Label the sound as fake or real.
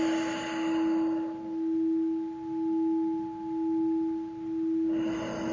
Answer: real